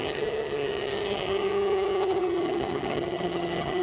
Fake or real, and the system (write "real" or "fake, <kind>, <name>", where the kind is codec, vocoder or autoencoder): fake, vocoder, HiFi-GAN